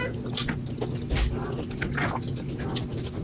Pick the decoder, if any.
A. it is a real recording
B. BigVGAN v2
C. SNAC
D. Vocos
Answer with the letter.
A